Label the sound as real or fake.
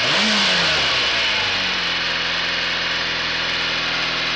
real